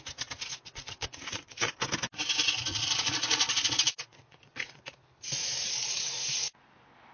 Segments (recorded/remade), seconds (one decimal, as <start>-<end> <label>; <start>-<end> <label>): 0.0-0.5 recorded; 0.5-1.7 remade; 1.7-2.7 recorded; 2.7-4.8 remade; 4.8-7.1 recorded